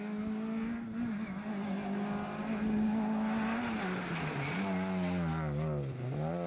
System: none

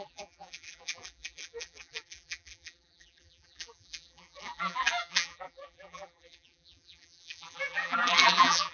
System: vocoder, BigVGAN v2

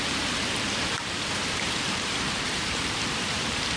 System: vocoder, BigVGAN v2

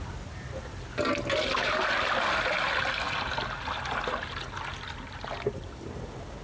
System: none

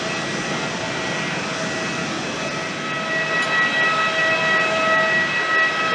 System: none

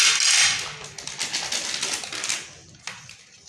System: none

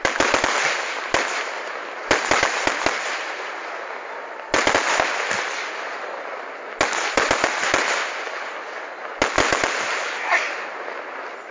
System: none